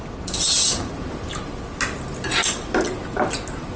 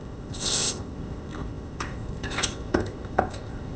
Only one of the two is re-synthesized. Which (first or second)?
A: second